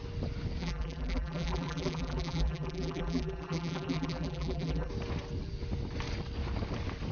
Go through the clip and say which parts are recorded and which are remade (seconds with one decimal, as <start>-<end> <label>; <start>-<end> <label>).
0.0-0.6 recorded; 0.6-4.9 remade; 4.9-7.1 recorded